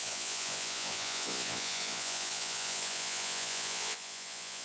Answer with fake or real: fake